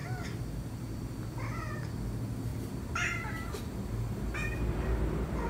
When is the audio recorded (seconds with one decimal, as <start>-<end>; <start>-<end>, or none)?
1.8-5.5